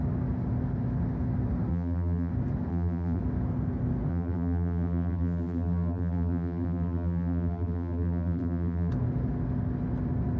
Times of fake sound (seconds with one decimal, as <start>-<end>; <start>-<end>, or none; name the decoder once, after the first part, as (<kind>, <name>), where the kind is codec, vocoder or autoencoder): 1.7-2.3 (vocoder, BigVGAN v2); 2.7-3.2; 4.1-8.9